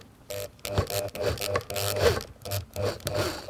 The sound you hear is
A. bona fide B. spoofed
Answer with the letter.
A